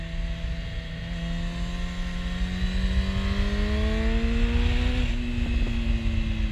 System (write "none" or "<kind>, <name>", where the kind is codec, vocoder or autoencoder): none